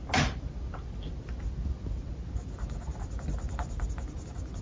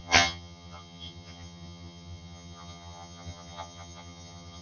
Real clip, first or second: first